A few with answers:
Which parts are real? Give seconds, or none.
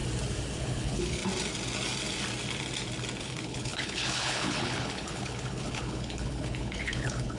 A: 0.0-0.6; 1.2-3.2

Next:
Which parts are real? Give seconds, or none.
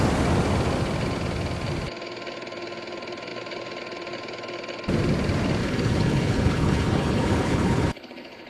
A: 0.0-5.6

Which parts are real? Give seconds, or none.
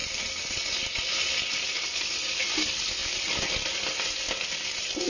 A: 0.0-5.1